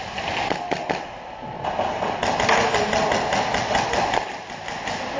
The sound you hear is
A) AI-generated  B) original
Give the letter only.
B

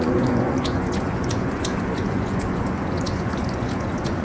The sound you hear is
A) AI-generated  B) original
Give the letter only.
A